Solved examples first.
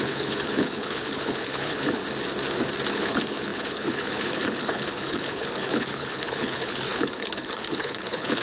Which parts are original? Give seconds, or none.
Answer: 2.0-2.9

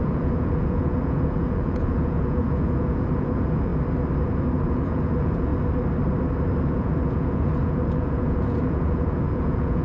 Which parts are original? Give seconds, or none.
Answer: 3.7-4.4; 5.5-6.6